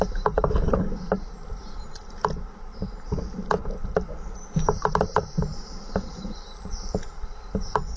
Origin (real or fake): fake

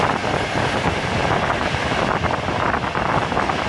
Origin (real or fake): real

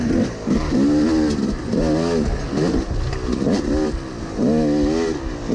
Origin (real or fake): real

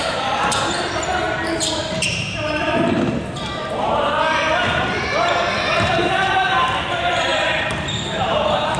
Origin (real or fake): fake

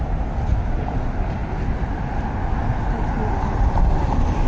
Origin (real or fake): real